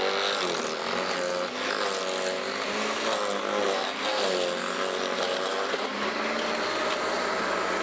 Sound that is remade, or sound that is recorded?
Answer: recorded